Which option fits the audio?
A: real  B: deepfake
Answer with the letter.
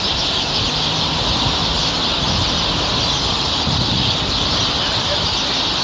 A